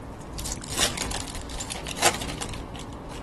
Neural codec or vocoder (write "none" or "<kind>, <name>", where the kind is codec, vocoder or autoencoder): none